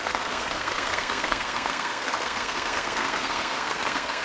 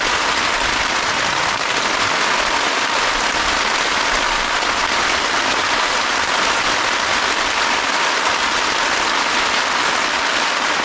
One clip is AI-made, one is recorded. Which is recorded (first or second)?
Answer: second